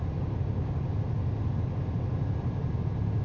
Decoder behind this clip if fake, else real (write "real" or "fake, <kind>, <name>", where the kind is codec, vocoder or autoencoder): real